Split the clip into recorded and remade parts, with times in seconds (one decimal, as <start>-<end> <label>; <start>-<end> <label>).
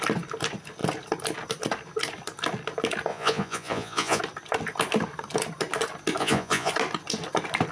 0.0-3.1 recorded; 3.1-4.2 remade; 4.2-6.2 recorded; 6.2-6.7 remade; 6.7-7.7 recorded